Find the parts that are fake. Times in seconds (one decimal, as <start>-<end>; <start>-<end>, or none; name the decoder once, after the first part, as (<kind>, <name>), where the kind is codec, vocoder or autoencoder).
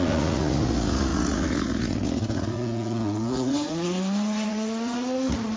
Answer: 0.0-5.6 (vocoder, Vocos)